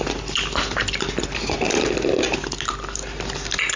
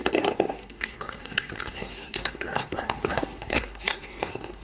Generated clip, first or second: second